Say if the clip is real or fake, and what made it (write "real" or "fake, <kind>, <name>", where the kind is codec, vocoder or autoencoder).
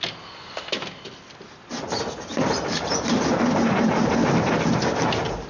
real